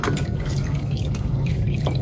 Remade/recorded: remade